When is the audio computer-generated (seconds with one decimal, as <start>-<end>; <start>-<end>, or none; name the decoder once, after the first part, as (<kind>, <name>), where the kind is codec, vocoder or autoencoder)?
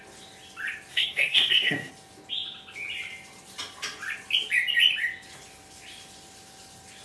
0.9-1.9 (codec, SNAC)